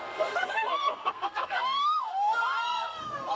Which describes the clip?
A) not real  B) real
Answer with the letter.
A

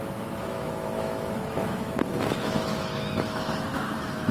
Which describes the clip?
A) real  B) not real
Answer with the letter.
B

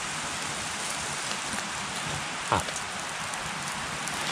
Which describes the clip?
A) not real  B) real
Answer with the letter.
B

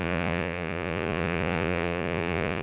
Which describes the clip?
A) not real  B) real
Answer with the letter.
A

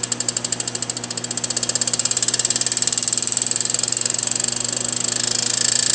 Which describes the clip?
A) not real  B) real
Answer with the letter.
B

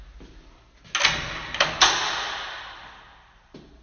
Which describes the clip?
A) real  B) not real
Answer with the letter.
A